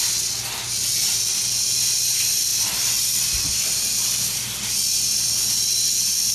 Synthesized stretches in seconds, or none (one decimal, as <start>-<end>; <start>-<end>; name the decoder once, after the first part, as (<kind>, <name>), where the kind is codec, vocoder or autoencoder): none